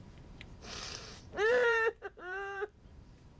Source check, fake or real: fake